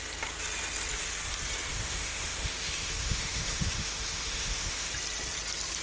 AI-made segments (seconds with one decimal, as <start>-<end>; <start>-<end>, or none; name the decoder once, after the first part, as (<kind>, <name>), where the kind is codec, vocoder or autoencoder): 1.7-4.9 (autoencoder, DAC-VAE)